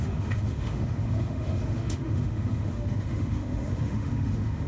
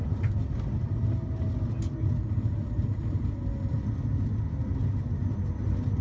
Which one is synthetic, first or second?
first